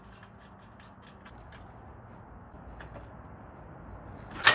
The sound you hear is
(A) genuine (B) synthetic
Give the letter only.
A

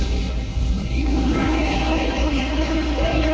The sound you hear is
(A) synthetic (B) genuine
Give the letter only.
A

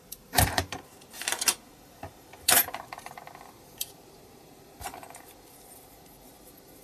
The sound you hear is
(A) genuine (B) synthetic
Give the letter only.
B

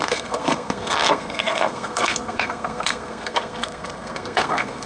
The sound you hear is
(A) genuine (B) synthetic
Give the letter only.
B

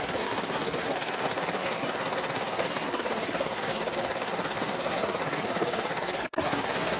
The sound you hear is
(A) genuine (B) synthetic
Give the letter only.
B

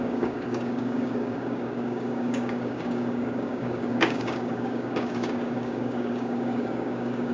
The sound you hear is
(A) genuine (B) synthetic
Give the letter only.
B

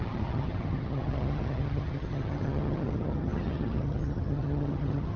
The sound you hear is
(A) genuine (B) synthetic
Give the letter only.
B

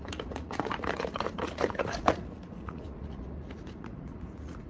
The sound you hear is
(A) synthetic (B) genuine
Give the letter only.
A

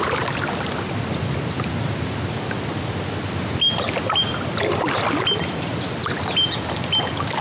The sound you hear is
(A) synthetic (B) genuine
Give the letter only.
B